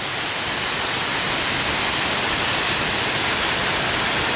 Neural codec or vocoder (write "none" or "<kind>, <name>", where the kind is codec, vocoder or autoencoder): none